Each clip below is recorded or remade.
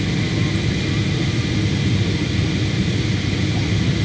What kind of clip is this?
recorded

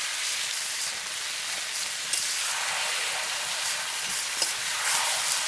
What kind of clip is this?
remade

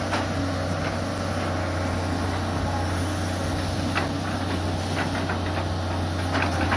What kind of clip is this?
recorded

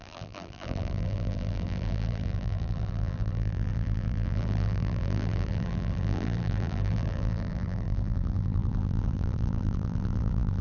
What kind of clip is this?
remade